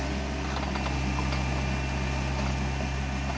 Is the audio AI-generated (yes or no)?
no